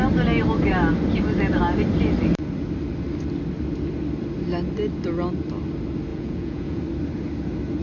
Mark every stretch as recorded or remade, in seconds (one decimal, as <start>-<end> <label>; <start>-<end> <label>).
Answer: 0.0-6.1 recorded; 6.1-6.8 remade; 6.8-7.8 recorded